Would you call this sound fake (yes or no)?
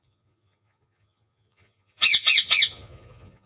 yes